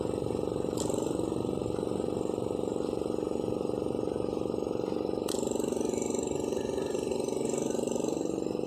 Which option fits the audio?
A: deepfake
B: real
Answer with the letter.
B